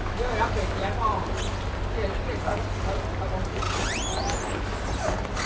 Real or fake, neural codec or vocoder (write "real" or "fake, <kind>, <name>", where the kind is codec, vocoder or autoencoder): real